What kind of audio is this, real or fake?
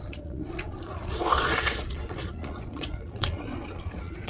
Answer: fake